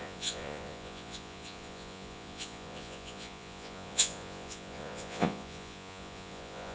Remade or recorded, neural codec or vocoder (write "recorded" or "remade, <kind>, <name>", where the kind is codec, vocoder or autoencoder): remade, vocoder, Vocos